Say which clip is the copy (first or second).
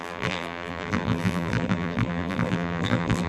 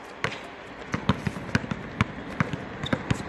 first